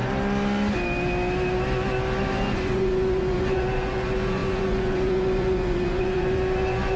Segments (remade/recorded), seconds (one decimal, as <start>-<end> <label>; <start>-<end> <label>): 0.0-2.3 recorded; 2.3-7.0 remade